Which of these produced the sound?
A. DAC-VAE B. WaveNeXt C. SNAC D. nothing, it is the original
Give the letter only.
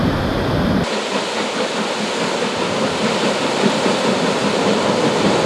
D